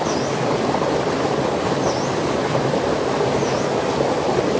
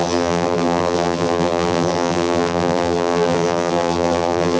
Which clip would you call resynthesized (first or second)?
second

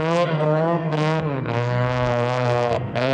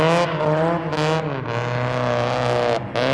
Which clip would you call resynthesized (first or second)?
first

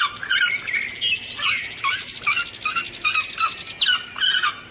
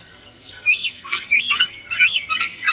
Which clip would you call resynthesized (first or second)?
second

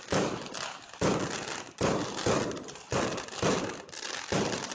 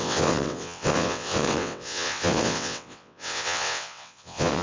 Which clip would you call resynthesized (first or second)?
second